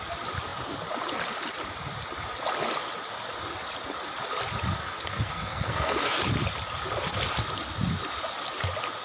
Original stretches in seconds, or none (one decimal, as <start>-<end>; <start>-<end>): 0.0-4.8; 6.2-9.0